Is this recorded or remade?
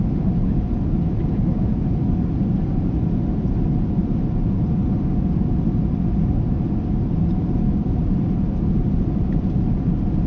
recorded